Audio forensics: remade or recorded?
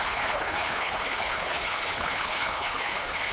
remade